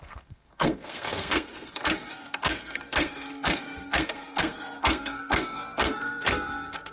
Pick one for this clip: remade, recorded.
remade